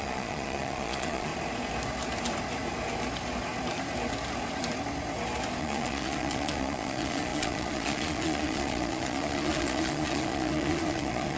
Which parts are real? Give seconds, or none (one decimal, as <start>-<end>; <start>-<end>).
1.3-5.6